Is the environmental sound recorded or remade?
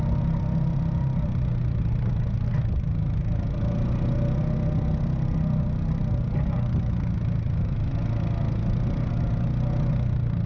recorded